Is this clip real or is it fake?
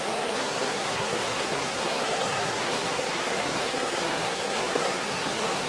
fake